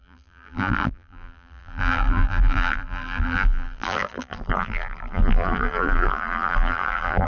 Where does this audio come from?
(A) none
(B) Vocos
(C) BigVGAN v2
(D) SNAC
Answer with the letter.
C